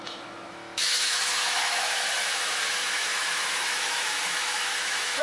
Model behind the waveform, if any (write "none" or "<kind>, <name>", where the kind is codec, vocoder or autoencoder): autoencoder, DAC-VAE